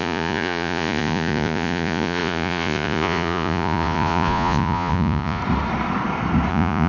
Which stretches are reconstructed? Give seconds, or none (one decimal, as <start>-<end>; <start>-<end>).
0.0-5.4; 6.5-6.9